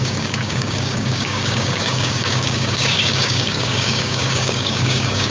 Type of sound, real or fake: fake